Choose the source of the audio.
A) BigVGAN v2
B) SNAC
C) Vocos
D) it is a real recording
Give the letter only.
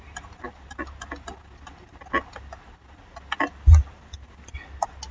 D